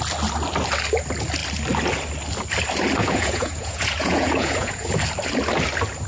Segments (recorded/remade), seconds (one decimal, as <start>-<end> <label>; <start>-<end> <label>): 0.0-3.0 recorded; 3.0-4.9 remade; 4.9-6.1 recorded